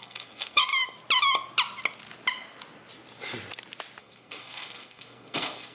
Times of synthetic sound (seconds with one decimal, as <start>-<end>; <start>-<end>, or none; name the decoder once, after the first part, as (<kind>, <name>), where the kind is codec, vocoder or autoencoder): 0.0-0.7 (codec, SNAC); 4.0-5.7